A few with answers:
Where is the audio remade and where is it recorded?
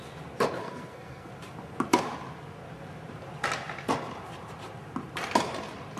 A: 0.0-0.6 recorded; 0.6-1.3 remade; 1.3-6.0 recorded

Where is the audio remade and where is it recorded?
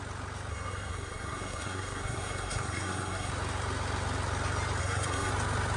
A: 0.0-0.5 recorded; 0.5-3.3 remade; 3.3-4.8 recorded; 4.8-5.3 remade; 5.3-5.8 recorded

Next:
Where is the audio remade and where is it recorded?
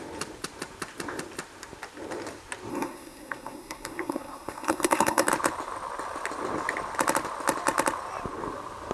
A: 0.0-2.7 recorded; 2.7-5.3 remade; 5.3-8.9 recorded